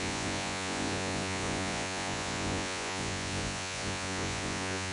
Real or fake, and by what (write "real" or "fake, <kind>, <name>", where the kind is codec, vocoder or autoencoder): fake, vocoder, Vocos